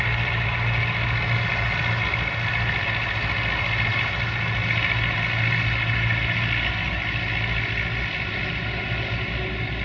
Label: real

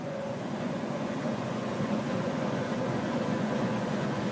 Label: fake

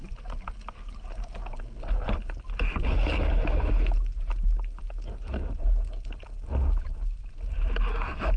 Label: real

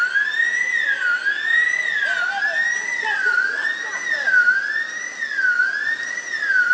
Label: real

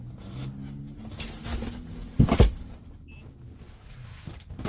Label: real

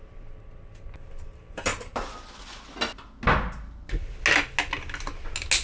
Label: real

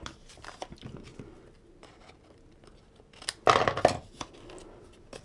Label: real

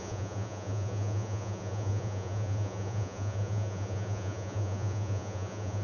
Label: fake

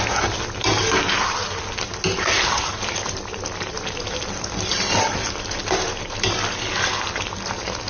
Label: real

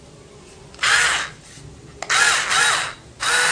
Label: real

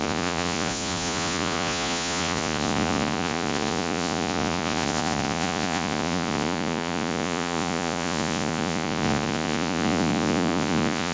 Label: fake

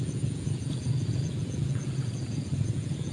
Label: fake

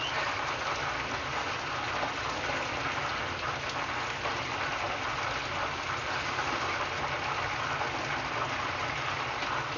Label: real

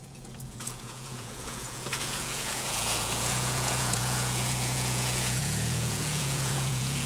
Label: fake